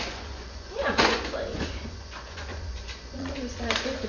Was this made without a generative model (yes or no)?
no